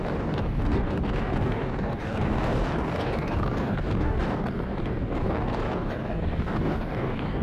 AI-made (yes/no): yes